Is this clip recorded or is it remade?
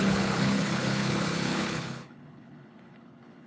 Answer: remade